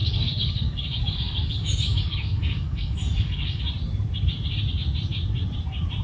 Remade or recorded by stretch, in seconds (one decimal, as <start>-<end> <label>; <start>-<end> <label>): 0.0-3.6 remade; 3.6-6.0 recorded